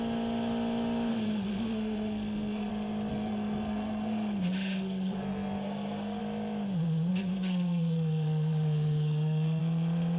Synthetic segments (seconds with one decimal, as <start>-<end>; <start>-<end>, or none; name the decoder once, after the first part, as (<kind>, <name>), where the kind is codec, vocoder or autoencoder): 1.1-2.7 (codec, SNAC); 3.1-6.2; 7.1-9.6